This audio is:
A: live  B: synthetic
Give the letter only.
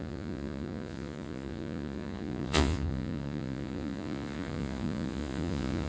B